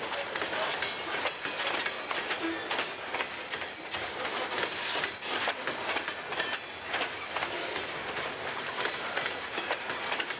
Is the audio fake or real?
real